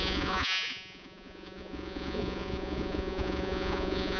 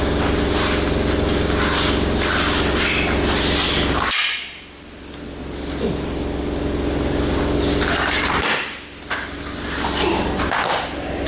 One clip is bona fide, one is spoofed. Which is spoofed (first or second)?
first